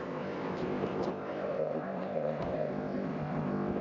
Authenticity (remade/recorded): remade